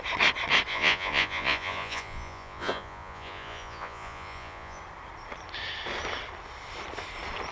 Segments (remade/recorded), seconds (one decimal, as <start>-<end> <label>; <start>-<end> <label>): 0.0-0.7 recorded; 0.7-4.8 remade; 4.8-7.5 recorded